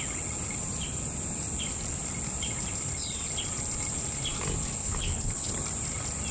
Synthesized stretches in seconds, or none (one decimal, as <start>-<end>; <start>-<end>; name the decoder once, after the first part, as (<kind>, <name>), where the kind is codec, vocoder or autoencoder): 4.8-5.5 (codec, HILCodec)